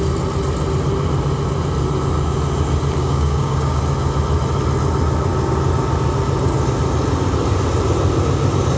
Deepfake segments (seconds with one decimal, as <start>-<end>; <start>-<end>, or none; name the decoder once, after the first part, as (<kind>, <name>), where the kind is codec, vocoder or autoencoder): 3.0-3.8 (codec, DAC)